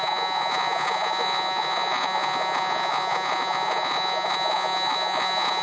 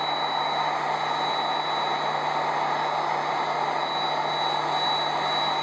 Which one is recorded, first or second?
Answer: second